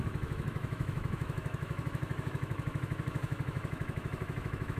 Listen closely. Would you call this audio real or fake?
fake